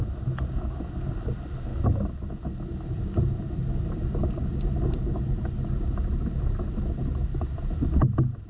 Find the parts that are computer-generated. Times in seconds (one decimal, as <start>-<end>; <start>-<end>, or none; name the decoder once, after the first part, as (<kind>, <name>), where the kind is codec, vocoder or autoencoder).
none